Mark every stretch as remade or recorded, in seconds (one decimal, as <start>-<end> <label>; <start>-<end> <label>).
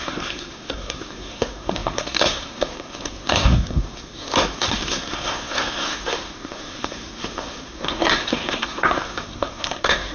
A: 0.0-10.1 remade